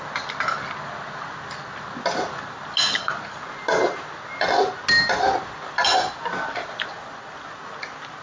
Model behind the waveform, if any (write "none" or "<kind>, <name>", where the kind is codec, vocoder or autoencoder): none